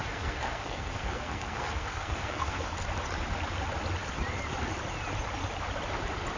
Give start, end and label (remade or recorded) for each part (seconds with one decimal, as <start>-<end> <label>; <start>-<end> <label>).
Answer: 0.0-2.7 remade; 2.7-6.4 recorded